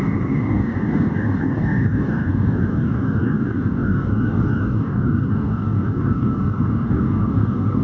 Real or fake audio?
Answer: fake